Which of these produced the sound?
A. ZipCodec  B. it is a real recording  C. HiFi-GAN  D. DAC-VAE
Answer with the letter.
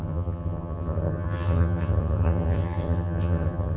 C